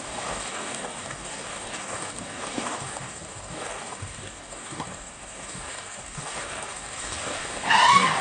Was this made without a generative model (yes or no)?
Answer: no